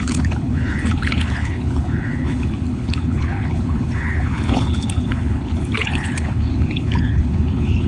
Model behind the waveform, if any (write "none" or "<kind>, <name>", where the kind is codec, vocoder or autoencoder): codec, HILCodec